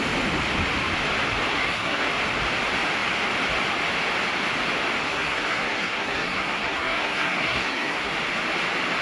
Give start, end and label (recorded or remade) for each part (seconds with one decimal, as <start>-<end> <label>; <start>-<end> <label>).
0.0-1.5 recorded; 1.5-2.1 remade; 2.1-5.1 recorded; 5.1-8.1 remade; 8.1-9.0 recorded